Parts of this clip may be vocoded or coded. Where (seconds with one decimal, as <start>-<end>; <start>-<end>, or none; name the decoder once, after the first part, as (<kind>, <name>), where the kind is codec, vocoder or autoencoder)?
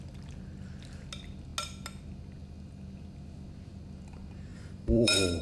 4.5-5.4 (vocoder, BigVGAN v2)